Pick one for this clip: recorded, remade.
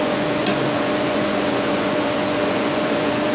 remade